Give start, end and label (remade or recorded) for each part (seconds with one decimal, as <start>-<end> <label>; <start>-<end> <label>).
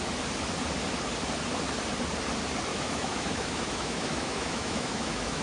0.0-2.7 recorded; 2.7-5.4 remade